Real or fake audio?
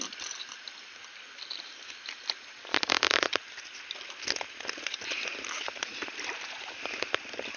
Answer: real